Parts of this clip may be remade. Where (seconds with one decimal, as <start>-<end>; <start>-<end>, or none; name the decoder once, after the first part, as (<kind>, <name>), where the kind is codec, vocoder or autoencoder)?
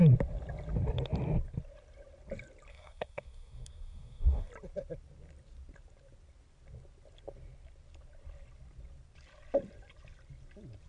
2.7-4.5 (codec, SNAC)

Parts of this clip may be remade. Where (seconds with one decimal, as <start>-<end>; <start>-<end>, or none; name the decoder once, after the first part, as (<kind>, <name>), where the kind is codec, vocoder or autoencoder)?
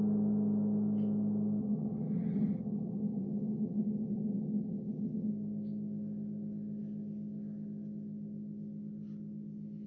1.6-5.3 (vocoder, HiFi-GAN)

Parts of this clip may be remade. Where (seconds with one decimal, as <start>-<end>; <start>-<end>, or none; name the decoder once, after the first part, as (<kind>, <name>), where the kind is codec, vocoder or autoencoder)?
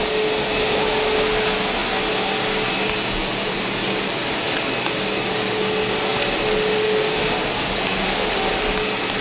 none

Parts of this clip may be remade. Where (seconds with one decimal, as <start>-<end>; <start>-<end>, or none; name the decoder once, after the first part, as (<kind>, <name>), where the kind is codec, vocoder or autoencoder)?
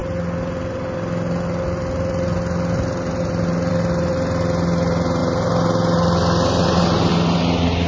none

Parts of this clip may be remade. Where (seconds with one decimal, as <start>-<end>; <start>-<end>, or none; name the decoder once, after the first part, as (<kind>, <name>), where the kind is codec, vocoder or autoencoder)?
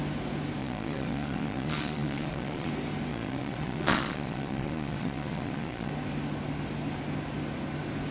0.6-2.7 (vocoder, Vocos); 3.1-5.9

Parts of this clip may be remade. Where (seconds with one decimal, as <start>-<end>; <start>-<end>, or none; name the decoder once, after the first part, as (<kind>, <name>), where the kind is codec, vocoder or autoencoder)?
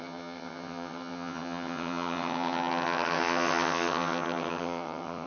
0.0-5.3 (vocoder, HiFi-GAN)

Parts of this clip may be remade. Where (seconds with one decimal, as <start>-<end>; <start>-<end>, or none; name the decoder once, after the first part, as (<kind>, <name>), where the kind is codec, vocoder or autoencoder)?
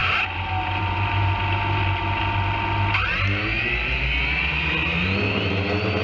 none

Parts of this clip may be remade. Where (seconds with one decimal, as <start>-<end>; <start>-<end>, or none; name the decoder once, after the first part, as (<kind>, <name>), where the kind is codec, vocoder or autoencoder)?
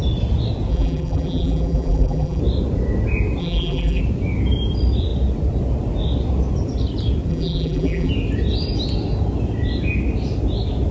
0.7-2.4 (vocoder, BigVGAN v2); 3.4-4.0; 7.3-8.1